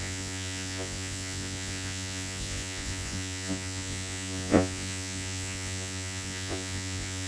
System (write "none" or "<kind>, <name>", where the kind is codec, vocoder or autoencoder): vocoder, Vocos